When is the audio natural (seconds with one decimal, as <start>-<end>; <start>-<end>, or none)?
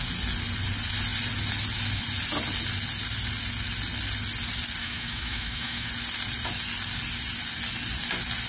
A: 0.0-4.8; 5.9-8.5